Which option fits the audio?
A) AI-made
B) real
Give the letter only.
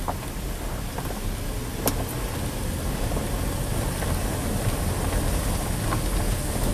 B